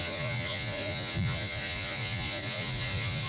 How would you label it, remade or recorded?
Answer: remade